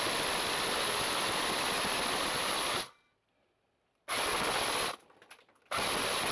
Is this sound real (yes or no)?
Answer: yes